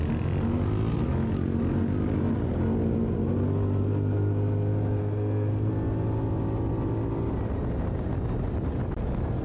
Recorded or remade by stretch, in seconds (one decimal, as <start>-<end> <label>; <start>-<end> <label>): 0.0-5.0 recorded; 5.0-5.7 remade; 5.7-9.4 recorded